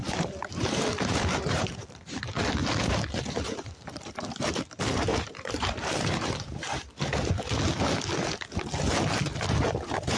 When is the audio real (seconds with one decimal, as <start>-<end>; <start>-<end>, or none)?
2.6-3.2; 6.8-9.7